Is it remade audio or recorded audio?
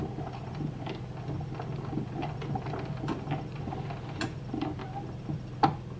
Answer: recorded